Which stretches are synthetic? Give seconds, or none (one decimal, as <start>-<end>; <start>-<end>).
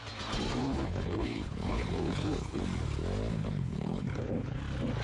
0.6-2.6; 3.3-4.6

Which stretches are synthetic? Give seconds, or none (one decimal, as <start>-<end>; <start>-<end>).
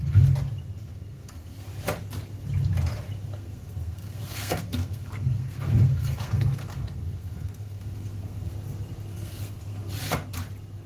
0.8-1.6; 3.3-8.5; 9.1-9.9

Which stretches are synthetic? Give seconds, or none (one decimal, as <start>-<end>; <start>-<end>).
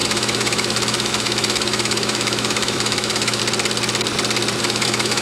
0.0-3.4; 4.6-5.2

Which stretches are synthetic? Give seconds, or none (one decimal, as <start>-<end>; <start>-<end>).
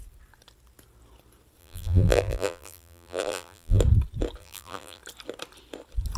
1.6-3.8; 4.4-5.0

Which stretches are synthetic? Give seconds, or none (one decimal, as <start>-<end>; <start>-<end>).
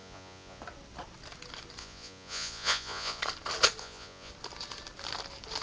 0.0-0.6; 1.8-3.2; 3.8-4.3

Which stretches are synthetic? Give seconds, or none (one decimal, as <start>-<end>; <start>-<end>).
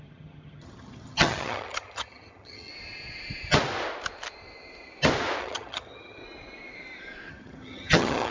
0.0-2.7; 5.4-6.2; 7.3-8.3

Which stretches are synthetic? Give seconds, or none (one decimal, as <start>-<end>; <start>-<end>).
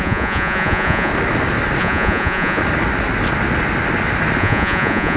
0.0-1.1; 1.8-2.6; 4.4-5.2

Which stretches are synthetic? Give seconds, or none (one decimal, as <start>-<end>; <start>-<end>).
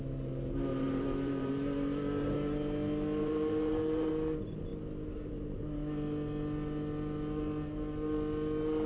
0.7-1.5; 3.2-4.1